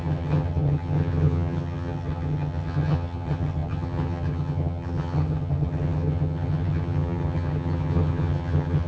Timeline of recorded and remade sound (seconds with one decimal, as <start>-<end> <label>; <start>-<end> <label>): 0.0-8.9 remade